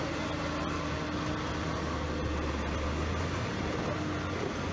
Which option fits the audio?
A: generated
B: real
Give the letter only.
B